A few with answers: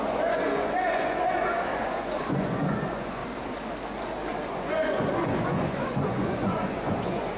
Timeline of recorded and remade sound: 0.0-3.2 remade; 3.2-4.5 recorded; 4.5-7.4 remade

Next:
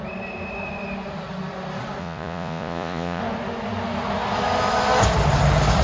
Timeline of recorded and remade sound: 0.0-2.0 recorded; 2.0-3.2 remade; 3.2-5.8 recorded

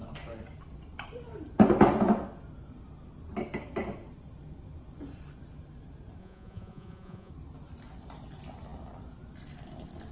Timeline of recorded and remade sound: 0.0-6.2 recorded; 6.2-7.3 remade; 7.3-10.1 recorded

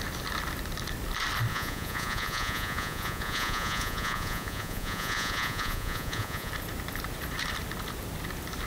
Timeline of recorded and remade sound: 0.0-1.5 recorded; 1.5-6.5 remade; 6.5-8.7 recorded

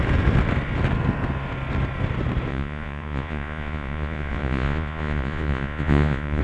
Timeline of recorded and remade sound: 0.0-2.5 recorded; 2.5-6.4 remade

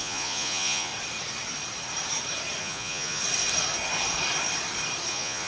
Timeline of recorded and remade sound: 0.0-0.9 remade; 0.9-2.6 recorded; 2.6-3.2 remade; 3.2-5.1 recorded; 5.1-5.5 remade

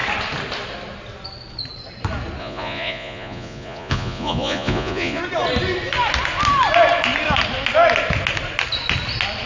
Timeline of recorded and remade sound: 0.0-2.4 recorded; 2.4-5.2 remade; 5.2-9.5 recorded

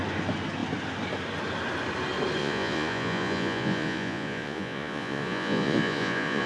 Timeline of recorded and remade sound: 0.0-2.4 recorded; 2.4-6.5 remade